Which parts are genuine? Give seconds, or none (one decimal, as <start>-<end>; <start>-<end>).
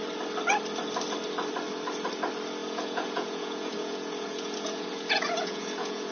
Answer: 0.0-2.6